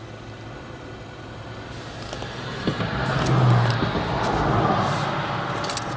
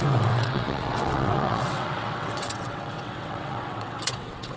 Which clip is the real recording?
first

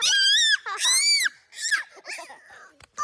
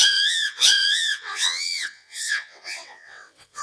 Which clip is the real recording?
first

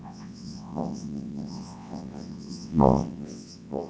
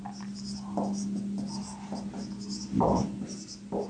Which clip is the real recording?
second